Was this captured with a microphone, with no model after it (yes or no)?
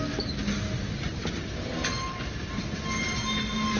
yes